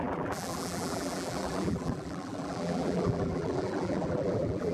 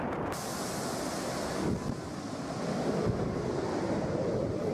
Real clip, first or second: second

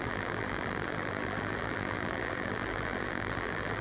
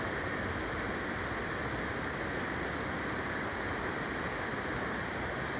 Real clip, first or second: second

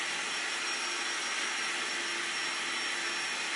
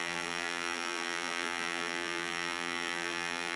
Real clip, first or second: first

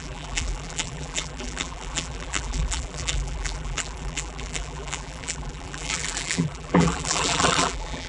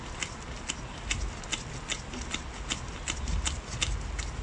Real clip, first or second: second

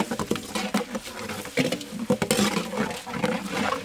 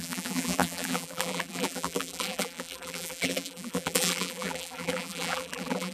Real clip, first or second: first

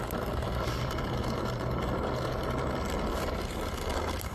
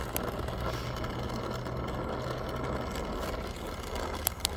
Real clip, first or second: second